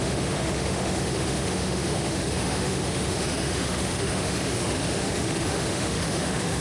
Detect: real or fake fake